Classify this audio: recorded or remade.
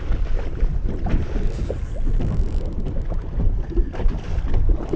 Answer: recorded